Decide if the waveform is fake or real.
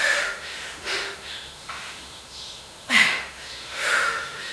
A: fake